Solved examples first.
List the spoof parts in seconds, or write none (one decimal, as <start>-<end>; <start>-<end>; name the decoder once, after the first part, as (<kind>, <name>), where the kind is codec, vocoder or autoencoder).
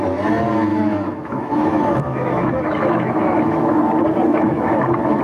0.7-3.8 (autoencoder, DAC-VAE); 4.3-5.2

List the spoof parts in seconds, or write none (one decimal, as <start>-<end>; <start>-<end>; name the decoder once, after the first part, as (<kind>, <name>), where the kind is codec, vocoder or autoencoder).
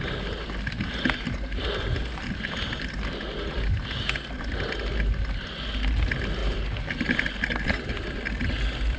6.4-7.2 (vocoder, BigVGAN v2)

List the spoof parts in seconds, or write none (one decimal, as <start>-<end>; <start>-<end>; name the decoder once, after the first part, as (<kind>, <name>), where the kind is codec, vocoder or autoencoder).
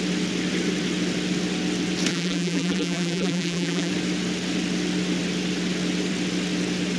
2.1-3.9 (vocoder, BigVGAN v2)